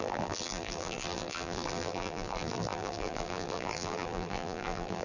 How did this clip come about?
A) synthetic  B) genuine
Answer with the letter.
A